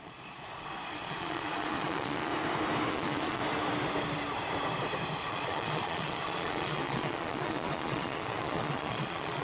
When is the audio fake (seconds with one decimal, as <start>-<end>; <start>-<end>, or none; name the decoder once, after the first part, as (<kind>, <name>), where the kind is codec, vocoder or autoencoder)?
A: 0.0-2.3 (vocoder, Vocos); 2.9-3.4; 5.3-9.4